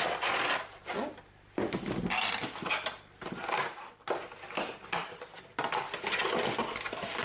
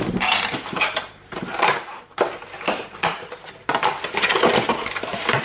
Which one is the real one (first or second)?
first